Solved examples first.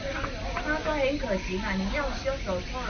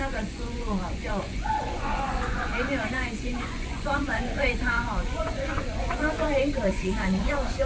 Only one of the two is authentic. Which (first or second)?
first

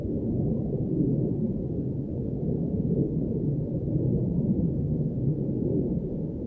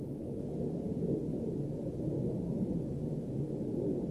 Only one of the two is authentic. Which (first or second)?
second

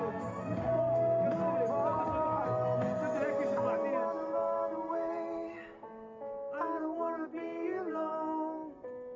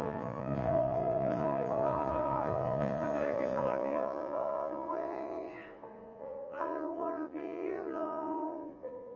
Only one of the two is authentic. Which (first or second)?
first